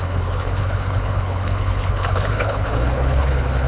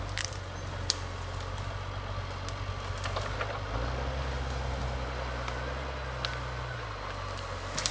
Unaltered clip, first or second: second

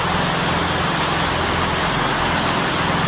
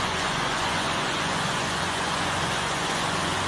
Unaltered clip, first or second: first